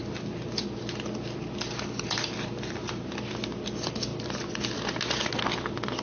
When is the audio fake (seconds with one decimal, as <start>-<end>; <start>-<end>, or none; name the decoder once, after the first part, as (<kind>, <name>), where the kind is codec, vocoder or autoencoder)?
none

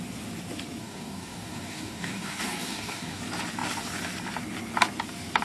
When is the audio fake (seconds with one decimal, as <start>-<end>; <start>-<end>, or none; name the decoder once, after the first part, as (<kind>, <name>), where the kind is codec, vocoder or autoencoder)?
0.8-3.2 (codec, DAC)

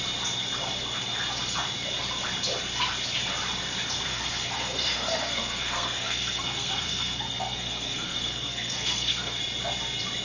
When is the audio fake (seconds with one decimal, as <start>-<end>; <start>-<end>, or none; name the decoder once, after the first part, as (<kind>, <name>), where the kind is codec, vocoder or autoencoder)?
4.1-9.4 (codec, SNAC)

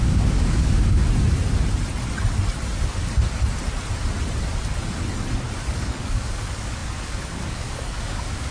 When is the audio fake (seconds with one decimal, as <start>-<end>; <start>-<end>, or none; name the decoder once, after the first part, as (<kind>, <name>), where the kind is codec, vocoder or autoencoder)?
0.0-1.0 (codec, DAC); 5.7-8.5

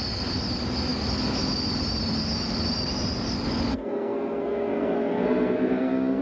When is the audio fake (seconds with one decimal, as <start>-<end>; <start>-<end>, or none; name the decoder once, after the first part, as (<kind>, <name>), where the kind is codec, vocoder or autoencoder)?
3.7-6.2 (codec, SNAC)

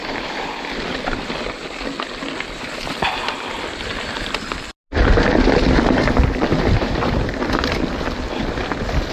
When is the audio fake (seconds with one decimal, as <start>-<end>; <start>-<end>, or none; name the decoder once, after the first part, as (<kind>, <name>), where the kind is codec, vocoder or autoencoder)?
6.5-7.4 (vocoder, BigVGAN v2)